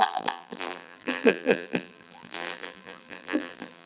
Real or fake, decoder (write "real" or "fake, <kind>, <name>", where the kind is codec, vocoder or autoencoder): fake, vocoder, BigVGAN v2